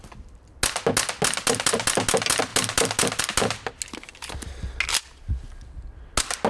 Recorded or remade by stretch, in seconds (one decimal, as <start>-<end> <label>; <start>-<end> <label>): 0.0-6.5 recorded